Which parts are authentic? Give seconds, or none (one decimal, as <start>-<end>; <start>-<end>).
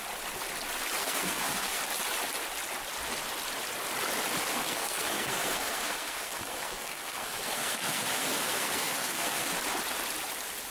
0.0-1.0; 1.8-4.5; 9.5-10.7